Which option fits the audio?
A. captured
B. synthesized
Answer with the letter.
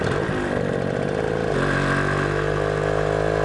A